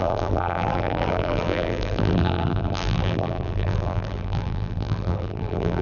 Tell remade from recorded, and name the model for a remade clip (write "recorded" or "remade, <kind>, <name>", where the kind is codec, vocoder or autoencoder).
remade, vocoder, BigVGAN v2